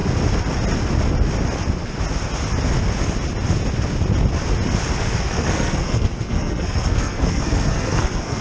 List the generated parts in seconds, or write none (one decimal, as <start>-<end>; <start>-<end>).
5.0-8.4